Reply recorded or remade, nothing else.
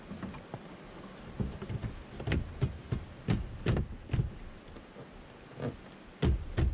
recorded